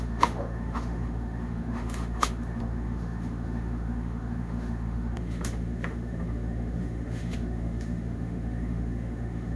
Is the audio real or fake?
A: fake